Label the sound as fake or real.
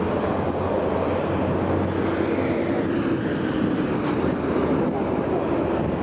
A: real